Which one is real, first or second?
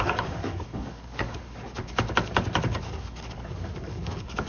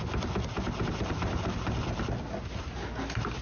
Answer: second